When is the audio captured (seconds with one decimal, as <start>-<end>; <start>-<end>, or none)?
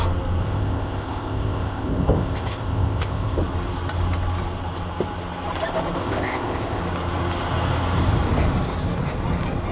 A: 0.0-0.4; 3.4-6.0; 6.8-9.7